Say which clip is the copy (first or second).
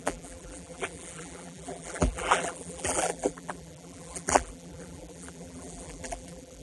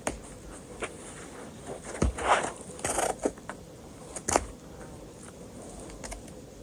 first